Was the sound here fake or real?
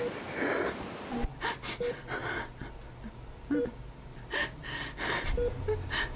real